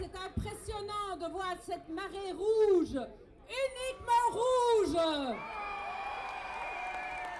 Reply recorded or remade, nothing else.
recorded